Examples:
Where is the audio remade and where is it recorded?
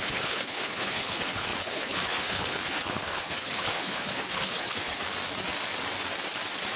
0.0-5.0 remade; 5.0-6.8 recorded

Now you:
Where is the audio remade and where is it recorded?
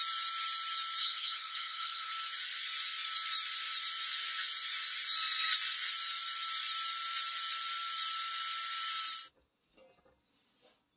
0.0-1.0 recorded; 1.0-2.1 remade; 2.1-11.0 recorded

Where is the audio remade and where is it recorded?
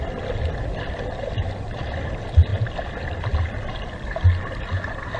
0.0-5.2 recorded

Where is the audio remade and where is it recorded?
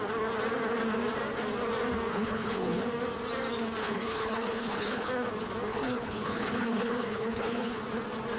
0.0-2.1 recorded; 2.1-2.8 remade; 2.8-3.8 recorded; 3.8-5.1 remade; 5.1-5.7 recorded; 5.7-7.8 remade; 7.8-8.4 recorded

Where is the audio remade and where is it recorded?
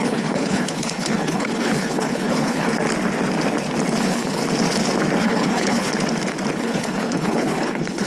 0.0-2.7 remade; 2.7-4.0 recorded; 4.0-4.4 remade; 4.4-5.2 recorded; 5.2-5.9 remade; 5.9-6.5 recorded; 6.5-8.1 remade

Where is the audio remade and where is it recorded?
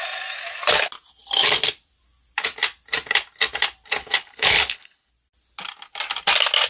0.0-4.0 recorded; 4.0-5.1 remade; 5.1-6.7 recorded